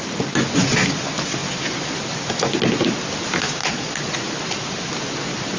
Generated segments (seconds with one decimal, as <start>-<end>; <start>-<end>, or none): 3.6-4.2